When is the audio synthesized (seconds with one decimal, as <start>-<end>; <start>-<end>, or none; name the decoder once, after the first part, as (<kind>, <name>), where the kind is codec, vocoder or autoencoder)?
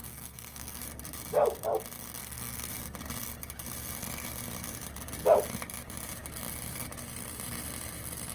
0.0-0.8 (codec, SNAC); 2.2-2.7